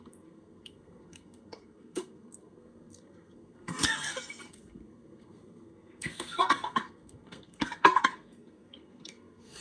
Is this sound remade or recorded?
remade